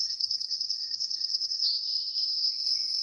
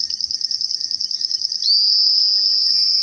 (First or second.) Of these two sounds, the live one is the second